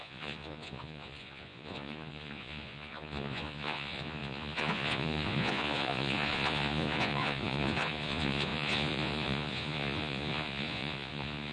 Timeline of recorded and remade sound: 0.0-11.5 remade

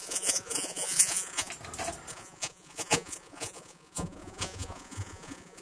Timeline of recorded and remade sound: 0.0-1.5 remade; 1.5-2.1 recorded; 2.1-5.6 remade